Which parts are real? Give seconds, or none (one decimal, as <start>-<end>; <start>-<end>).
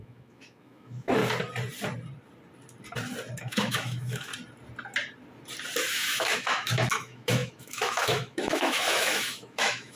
1.2-3.4; 4.3-5.9